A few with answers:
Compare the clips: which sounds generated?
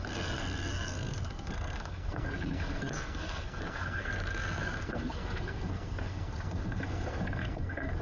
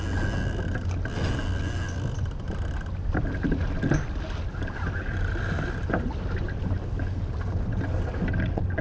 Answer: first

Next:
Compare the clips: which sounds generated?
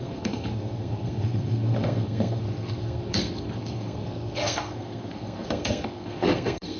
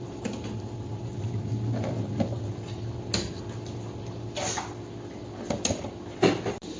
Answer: first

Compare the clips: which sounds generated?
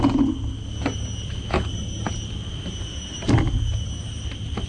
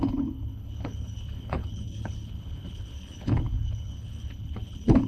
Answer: second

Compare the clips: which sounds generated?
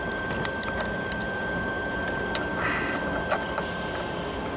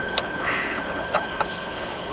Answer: second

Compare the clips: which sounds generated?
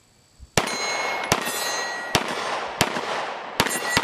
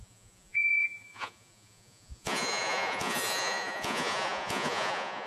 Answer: second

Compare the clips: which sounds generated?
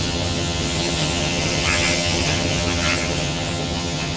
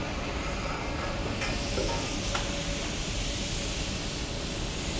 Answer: first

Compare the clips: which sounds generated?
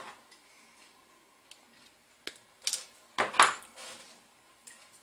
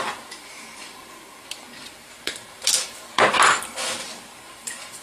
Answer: second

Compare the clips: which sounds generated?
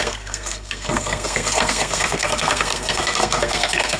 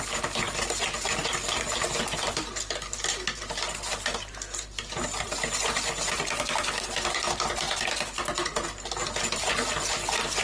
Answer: first